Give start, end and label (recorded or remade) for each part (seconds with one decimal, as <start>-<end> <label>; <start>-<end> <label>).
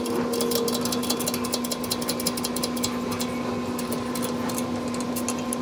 0.0-5.6 recorded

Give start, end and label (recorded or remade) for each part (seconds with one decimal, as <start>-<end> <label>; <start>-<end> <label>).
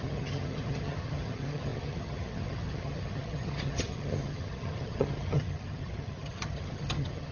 0.0-7.3 remade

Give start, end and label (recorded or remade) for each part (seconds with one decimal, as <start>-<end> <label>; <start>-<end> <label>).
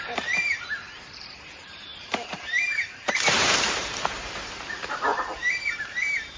0.0-6.4 remade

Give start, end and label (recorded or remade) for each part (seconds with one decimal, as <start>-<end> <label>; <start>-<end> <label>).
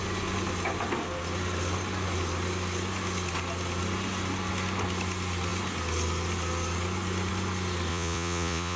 0.0-7.9 recorded; 7.9-8.8 remade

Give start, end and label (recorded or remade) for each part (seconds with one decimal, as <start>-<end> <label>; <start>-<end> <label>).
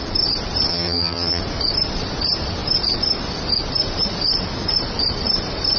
0.0-0.7 recorded; 0.7-1.4 remade; 1.4-5.8 recorded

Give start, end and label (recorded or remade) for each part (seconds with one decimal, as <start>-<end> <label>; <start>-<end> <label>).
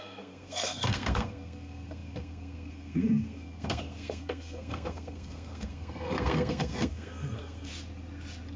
0.0-7.7 remade; 7.7-8.6 recorded